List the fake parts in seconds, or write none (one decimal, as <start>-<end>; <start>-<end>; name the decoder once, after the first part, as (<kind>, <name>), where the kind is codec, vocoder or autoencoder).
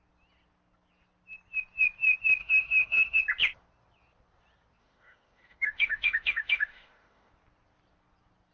2.4-3.2 (autoencoder, DAC-VAE); 4.8-7.3